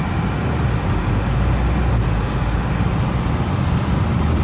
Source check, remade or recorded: recorded